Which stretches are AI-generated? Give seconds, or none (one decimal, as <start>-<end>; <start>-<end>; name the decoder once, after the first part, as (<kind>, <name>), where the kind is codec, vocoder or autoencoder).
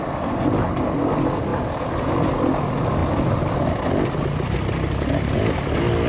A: none